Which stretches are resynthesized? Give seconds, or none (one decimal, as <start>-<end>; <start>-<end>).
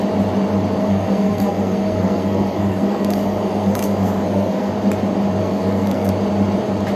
0.8-4.7; 5.4-6.1